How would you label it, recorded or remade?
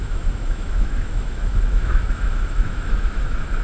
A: remade